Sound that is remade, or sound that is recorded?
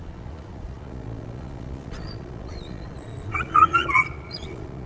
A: remade